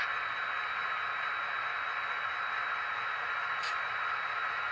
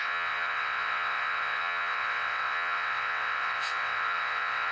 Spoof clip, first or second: second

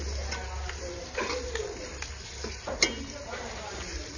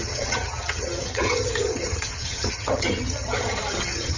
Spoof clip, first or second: second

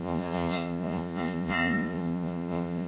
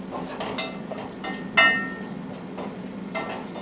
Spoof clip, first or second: first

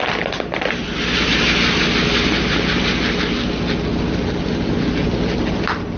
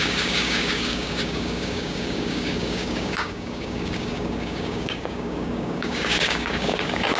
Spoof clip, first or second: second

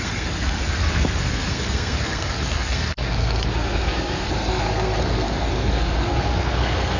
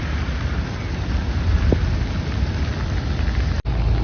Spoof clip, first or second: first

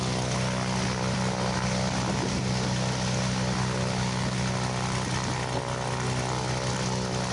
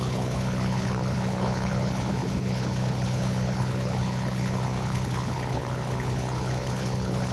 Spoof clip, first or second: second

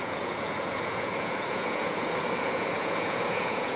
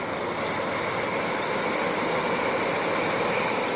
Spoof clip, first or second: first